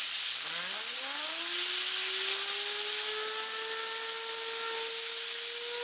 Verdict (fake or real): real